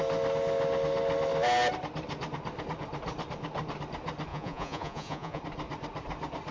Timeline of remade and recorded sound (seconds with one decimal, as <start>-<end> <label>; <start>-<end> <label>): 0.0-4.3 recorded; 4.3-5.4 remade; 5.4-6.5 recorded